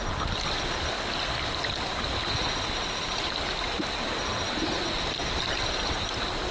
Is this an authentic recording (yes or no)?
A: yes